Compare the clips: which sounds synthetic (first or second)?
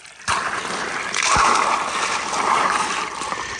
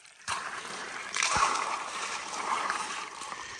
second